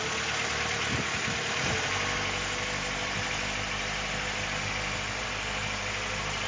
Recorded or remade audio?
recorded